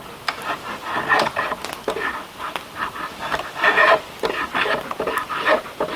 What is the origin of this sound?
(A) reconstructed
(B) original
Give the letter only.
B